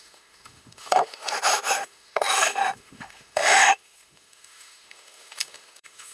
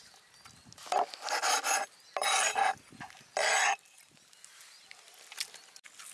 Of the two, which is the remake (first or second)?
first